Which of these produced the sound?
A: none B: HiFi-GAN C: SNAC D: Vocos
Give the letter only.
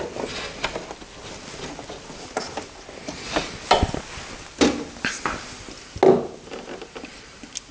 A